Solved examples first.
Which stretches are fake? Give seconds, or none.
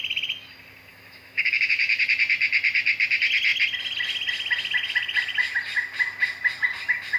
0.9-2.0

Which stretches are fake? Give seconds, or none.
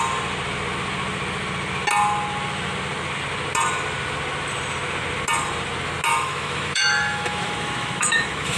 6.1-8.6